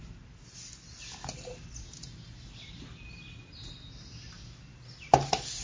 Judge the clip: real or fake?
real